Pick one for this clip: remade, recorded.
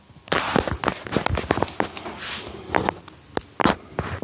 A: recorded